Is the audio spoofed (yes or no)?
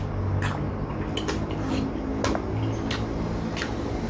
no